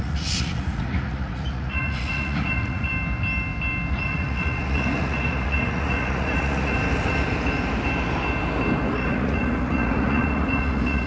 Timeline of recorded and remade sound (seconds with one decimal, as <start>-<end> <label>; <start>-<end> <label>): 0.0-2.9 remade; 2.9-3.9 recorded; 3.9-6.8 remade; 6.8-8.9 recorded; 8.9-11.1 remade